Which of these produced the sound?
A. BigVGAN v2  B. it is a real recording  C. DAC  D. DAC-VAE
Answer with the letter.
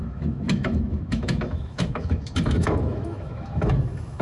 D